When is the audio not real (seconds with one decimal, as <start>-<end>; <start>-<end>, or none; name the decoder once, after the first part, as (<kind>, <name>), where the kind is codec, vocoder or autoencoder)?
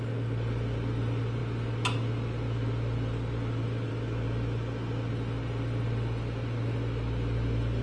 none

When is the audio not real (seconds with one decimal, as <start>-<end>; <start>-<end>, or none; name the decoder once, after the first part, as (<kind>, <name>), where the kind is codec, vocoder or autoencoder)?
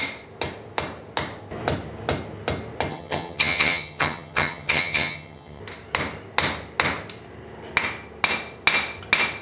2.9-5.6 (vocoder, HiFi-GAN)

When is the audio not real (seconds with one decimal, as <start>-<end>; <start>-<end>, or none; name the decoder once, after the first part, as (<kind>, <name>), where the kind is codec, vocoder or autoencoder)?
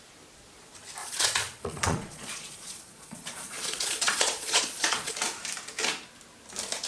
1.0-5.1 (vocoder, Vocos)